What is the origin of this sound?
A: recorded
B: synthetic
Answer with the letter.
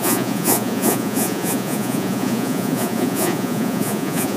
B